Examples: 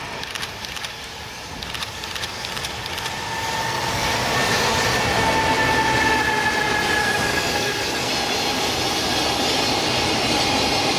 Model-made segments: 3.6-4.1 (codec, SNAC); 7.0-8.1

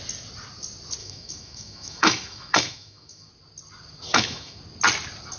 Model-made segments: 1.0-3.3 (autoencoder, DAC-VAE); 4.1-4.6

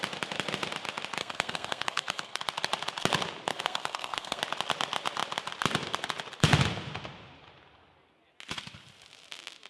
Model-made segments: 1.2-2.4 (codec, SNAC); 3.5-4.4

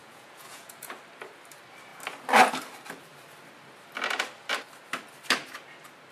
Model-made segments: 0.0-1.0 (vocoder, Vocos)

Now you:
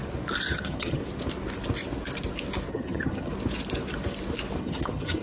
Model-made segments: 0.5-1.0 (vocoder, HiFi-GAN); 2.7-3.3; 4.6-5.2

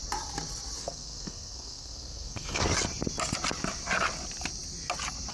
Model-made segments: 0.8-2.6 (codec, SNAC)

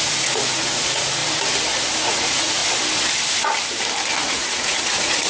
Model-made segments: 0.0-1.2 (vocoder, Vocos); 2.0-2.6; 4.2-5.3